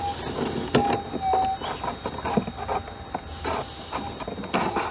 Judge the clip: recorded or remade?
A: recorded